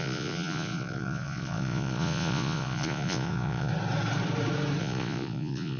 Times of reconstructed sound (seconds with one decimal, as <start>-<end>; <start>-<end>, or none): 0.0-3.7; 4.8-5.8